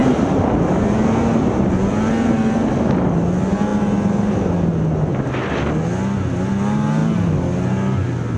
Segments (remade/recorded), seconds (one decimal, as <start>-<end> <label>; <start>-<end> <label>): 0.0-8.4 recorded